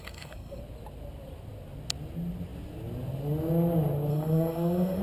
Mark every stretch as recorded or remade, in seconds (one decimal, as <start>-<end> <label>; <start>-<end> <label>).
0.0-0.6 remade; 0.6-4.1 recorded; 4.1-5.0 remade